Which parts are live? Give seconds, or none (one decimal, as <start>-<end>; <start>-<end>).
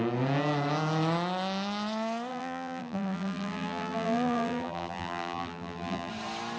0.0-2.3; 6.1-6.6